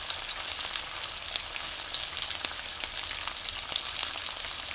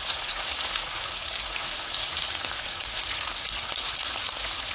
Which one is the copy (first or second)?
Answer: second